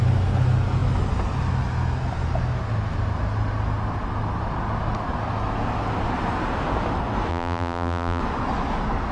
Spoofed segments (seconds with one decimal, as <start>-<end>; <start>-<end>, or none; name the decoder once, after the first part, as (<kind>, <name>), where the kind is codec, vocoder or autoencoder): 7.3-8.2 (vocoder, BigVGAN v2)